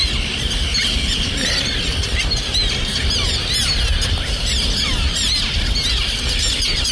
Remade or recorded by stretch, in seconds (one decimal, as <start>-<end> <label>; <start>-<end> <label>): 0.0-6.9 recorded